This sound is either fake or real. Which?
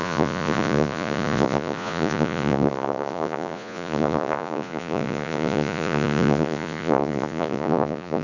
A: fake